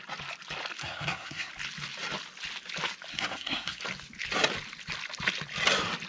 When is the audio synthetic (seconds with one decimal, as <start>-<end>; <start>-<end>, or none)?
0.8-1.5; 3.1-3.8